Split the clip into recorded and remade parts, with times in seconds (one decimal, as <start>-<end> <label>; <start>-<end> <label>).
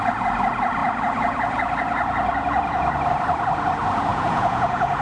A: 0.0-4.1 recorded; 4.1-5.0 remade